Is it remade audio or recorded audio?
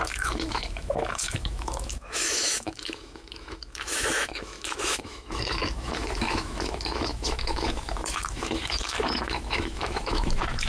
remade